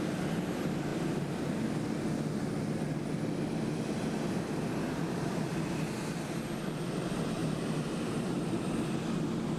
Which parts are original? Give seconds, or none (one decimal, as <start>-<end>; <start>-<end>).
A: 0.0-7.4; 8.4-9.6